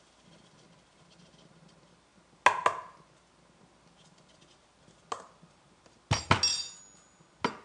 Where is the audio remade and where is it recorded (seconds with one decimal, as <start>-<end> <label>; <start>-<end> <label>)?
0.0-7.6 recorded

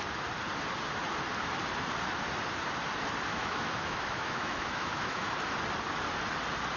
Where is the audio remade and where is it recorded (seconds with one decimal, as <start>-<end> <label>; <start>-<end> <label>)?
0.0-3.3 recorded; 3.3-5.3 remade; 5.3-6.8 recorded

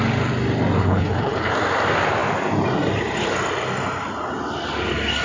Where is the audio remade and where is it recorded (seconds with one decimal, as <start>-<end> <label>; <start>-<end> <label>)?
0.0-0.8 recorded; 0.8-1.5 remade; 1.5-5.2 recorded

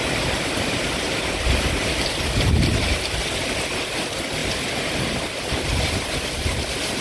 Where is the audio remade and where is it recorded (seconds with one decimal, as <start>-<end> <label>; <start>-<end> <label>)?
0.0-7.0 recorded